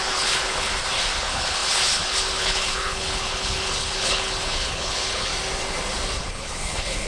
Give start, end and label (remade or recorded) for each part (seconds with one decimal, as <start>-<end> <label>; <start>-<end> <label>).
0.0-0.7 remade; 0.7-1.2 recorded; 1.2-5.3 remade; 5.3-6.2 recorded; 6.2-7.1 remade